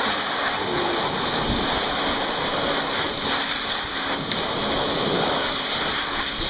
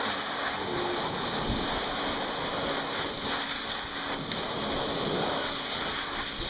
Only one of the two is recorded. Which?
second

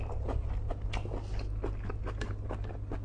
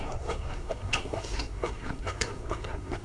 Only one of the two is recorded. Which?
first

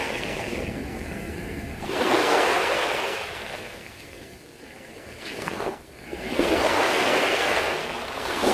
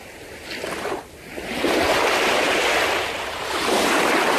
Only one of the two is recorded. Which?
second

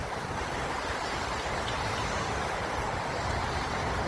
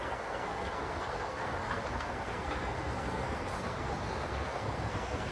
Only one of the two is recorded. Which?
first